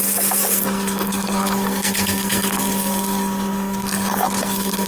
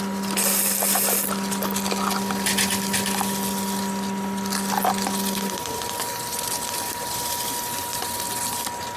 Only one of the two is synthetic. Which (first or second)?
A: first